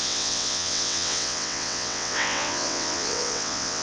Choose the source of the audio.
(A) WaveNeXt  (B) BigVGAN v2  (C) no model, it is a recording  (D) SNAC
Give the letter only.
A